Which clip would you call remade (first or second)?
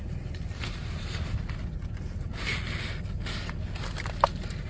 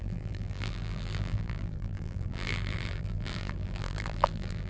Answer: second